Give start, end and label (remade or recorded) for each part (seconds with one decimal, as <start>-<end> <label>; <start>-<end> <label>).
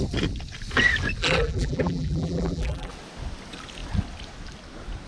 0.0-1.2 recorded; 1.2-2.9 remade; 2.9-5.1 recorded